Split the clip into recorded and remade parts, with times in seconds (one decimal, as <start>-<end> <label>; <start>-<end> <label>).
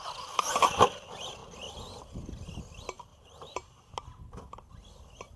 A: 0.0-3.1 recorded; 3.1-3.9 remade; 3.9-5.4 recorded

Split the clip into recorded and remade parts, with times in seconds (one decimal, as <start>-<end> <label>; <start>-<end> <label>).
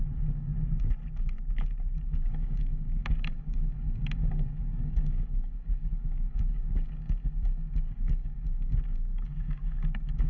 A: 0.0-0.5 remade; 0.5-1.9 recorded; 1.9-10.3 remade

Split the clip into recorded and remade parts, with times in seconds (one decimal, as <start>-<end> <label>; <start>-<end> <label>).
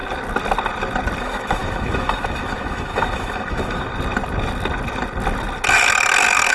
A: 0.0-1.2 recorded; 1.2-3.9 remade; 3.9-6.5 recorded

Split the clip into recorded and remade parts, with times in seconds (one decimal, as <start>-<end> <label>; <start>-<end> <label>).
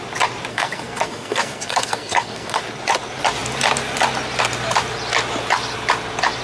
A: 0.0-0.5 recorded; 0.5-2.6 remade; 2.6-6.4 recorded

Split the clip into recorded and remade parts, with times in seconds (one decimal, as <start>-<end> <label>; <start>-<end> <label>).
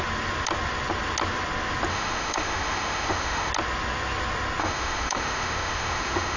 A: 0.0-1.9 recorded; 1.9-3.5 remade; 3.5-4.6 recorded; 4.6-6.4 remade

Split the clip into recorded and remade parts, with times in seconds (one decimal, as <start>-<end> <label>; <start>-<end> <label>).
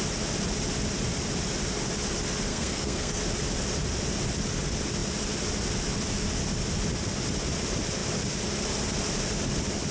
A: 0.0-2.5 recorded; 2.5-3.2 remade; 3.2-9.9 recorded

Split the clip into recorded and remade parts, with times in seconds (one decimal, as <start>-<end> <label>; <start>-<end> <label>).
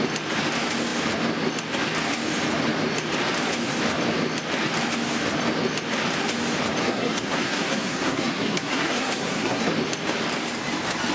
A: 0.0-6.8 recorded; 6.8-9.7 remade; 9.7-11.1 recorded